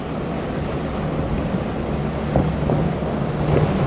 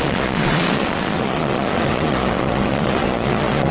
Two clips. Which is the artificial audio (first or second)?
second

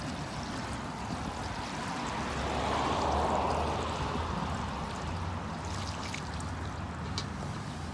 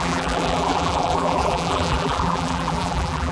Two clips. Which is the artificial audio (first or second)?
second